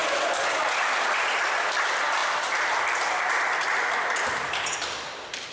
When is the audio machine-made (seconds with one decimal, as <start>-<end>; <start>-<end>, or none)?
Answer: none